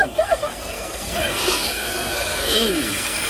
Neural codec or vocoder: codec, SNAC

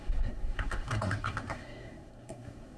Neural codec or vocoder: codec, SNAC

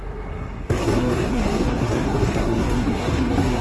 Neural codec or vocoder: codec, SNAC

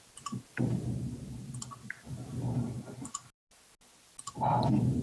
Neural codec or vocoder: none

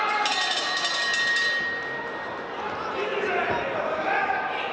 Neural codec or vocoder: none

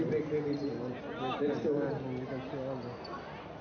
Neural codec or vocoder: none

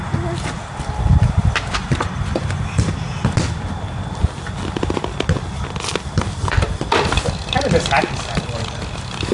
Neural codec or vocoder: none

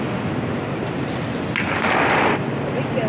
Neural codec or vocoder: none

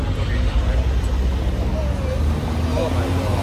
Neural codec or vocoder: none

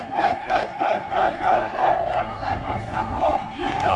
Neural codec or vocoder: codec, SNAC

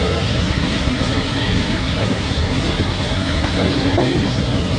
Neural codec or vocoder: codec, SNAC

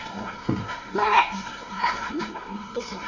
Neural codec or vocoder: codec, SNAC